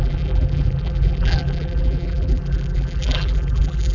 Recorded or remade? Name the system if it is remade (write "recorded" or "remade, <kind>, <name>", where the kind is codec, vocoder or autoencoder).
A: remade, vocoder, BigVGAN v2